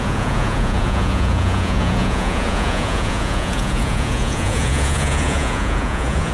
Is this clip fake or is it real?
fake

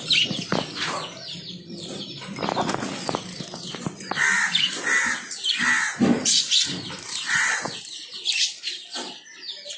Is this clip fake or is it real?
real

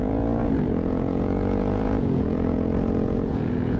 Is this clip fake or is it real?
fake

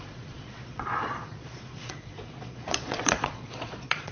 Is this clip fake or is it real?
fake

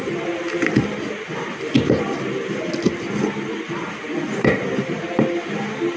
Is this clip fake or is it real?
real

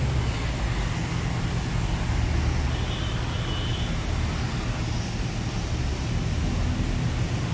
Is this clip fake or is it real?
real